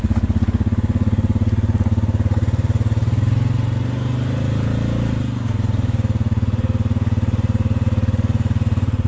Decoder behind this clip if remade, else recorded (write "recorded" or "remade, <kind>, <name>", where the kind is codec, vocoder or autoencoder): recorded